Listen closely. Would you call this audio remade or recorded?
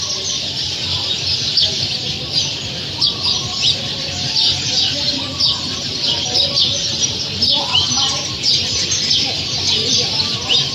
recorded